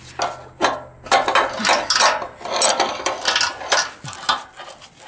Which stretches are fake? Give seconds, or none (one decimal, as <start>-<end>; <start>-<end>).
none